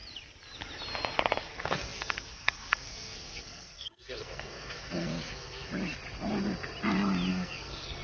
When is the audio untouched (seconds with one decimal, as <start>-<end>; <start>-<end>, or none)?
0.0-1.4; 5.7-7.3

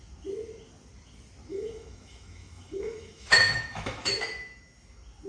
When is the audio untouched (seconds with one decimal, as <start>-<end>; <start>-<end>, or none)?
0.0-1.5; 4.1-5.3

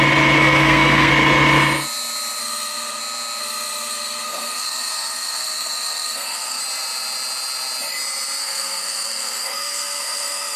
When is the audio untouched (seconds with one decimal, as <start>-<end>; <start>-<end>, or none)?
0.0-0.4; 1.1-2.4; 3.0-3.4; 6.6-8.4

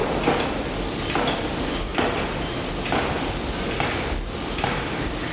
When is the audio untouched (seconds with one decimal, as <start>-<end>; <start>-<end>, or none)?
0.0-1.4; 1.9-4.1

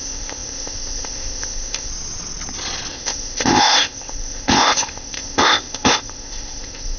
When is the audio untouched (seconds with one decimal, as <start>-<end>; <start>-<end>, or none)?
1.9-2.9

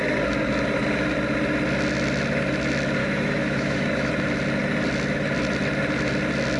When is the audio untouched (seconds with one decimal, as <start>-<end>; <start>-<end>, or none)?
0.0-3.0; 4.1-6.6

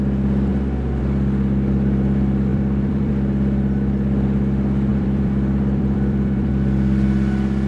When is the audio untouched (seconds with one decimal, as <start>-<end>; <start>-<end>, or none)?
0.0-2.5; 3.1-4.9; 6.5-7.7

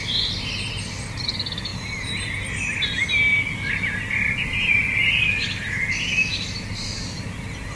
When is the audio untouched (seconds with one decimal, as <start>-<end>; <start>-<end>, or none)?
0.0-7.8